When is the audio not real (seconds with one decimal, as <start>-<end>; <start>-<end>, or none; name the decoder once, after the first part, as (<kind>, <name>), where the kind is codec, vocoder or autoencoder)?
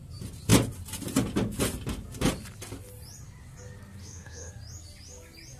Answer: 4.0-4.5 (autoencoder, DAC-VAE)